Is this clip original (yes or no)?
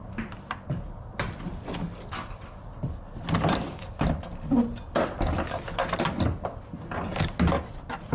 yes